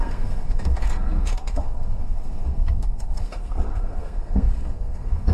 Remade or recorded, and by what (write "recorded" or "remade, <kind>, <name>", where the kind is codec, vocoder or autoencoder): remade, codec, SNAC